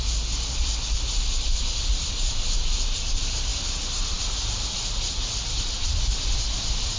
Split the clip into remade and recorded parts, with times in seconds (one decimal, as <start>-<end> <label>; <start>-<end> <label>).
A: 0.0-7.0 recorded